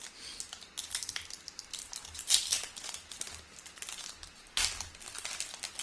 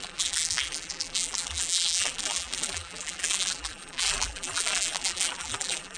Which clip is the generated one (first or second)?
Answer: second